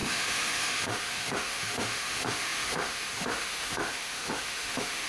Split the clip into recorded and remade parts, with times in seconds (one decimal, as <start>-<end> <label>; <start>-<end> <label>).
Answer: 0.0-5.1 remade